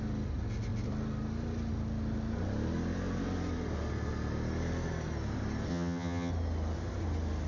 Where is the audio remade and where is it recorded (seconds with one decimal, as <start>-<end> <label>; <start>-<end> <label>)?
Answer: 0.0-5.7 recorded; 5.7-6.3 remade; 6.3-7.5 recorded